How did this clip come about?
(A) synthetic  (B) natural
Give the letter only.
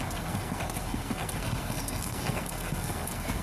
A